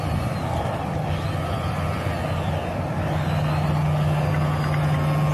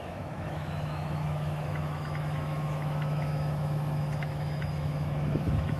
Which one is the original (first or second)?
first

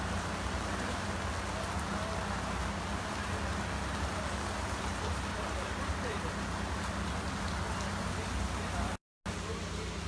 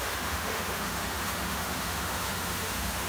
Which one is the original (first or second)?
first